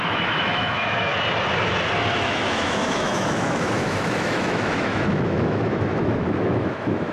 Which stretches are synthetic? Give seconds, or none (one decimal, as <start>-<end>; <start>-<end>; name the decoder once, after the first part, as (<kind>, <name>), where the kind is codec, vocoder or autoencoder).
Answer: 0.0-1.1 (autoencoder, DAC-VAE); 2.2-7.1